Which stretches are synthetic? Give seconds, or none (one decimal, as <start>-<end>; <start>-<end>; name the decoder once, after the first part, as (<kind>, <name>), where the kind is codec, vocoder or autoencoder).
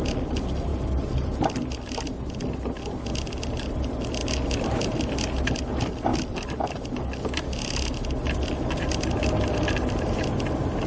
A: none